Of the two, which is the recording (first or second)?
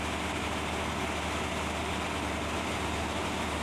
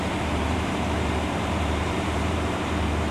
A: first